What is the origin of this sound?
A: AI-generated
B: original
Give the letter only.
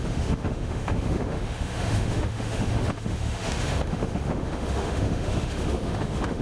A